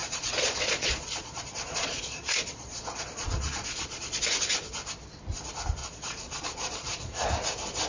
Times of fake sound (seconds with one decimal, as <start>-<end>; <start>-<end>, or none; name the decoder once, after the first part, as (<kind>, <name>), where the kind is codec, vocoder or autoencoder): 0.0-4.2 (vocoder, Vocos); 5.8-7.3

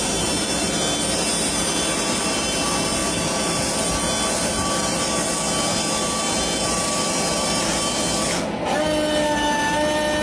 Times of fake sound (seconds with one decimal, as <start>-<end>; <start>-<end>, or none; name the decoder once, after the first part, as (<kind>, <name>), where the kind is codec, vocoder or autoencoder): none